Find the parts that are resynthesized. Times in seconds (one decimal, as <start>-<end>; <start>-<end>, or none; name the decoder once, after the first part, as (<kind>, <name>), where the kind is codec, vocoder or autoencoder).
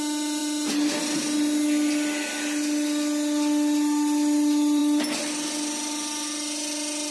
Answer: none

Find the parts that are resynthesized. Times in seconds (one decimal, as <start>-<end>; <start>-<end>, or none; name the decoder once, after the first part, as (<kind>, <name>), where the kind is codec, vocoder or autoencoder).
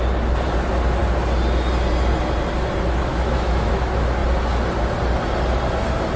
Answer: 3.1-3.7 (autoencoder, DAC-VAE)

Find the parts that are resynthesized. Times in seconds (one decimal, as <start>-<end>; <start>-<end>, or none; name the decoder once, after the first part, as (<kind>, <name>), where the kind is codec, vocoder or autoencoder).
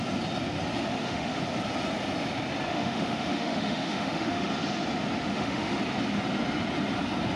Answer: 0.9-1.4 (autoencoder, DAC-VAE); 2.7-4.5; 5.3-5.8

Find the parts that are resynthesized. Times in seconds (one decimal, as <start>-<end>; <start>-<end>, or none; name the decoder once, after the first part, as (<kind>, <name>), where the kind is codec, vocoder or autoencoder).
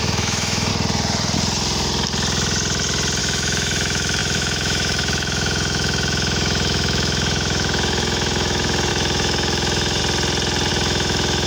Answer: 0.0-0.7 (autoencoder, DAC-VAE); 3.2-10.0; 10.7-11.5